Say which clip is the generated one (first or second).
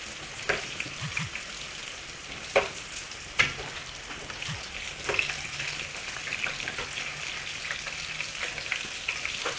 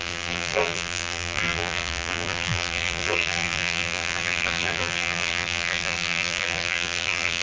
second